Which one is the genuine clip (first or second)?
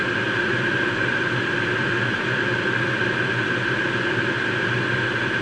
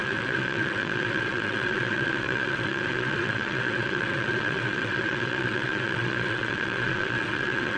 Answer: first